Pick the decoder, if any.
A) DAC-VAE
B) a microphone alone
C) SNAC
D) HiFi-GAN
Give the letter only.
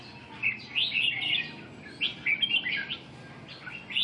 B